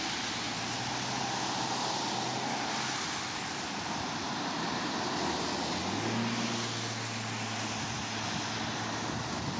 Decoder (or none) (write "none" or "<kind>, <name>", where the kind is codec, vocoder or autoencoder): none